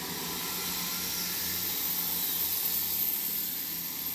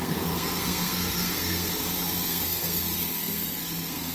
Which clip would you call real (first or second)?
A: first